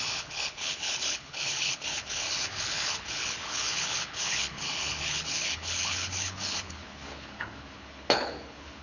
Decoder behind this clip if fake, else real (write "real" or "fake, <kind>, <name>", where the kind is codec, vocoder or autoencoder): fake, codec, HILCodec